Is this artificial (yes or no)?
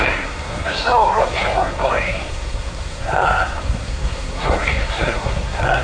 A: yes